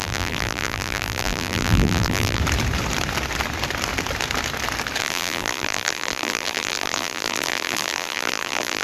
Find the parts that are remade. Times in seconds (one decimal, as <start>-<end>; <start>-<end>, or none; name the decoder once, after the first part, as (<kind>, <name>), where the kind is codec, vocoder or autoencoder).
0.0-2.4 (vocoder, BigVGAN v2); 5.0-8.8